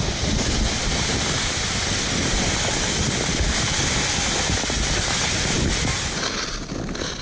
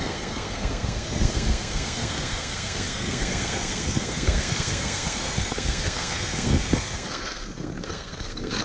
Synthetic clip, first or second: second